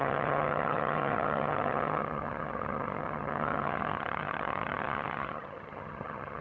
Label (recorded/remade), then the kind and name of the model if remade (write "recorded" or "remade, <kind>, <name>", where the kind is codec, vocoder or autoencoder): remade, vocoder, HiFi-GAN